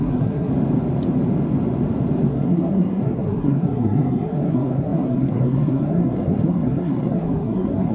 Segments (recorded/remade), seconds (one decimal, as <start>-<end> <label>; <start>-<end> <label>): 0.0-0.5 remade; 0.5-2.3 recorded; 2.3-7.9 remade